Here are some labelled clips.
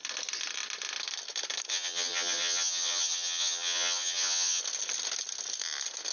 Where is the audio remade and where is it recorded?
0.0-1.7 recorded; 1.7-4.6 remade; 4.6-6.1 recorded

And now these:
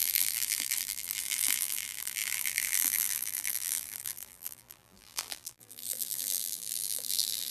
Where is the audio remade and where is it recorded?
0.0-7.5 remade

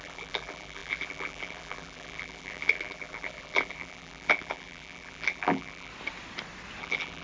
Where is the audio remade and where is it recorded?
0.0-5.9 remade; 5.9-6.8 recorded; 6.8-7.2 remade

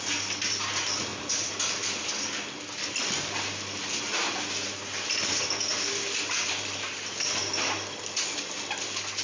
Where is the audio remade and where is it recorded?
0.0-1.1 recorded; 1.1-2.1 remade; 2.1-9.2 recorded

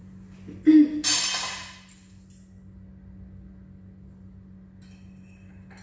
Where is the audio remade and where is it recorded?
0.0-5.8 recorded

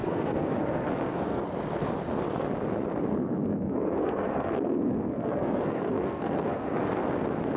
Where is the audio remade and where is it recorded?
0.0-1.4 remade; 1.4-3.1 recorded; 3.1-6.8 remade; 6.8-7.6 recorded

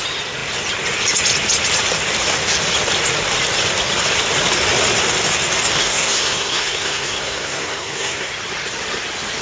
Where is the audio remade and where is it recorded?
0.0-5.8 recorded; 5.8-8.3 remade; 8.3-9.4 recorded

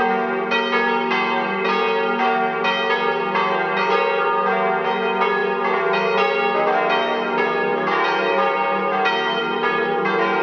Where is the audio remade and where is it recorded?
0.0-10.4 recorded